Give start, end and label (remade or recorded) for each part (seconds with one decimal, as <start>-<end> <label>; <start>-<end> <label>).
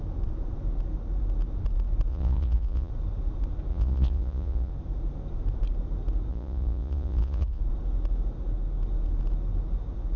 0.0-2.1 recorded; 2.1-2.9 remade; 2.9-3.7 recorded; 3.7-4.7 remade; 4.7-6.3 recorded; 6.3-7.6 remade; 7.6-10.2 recorded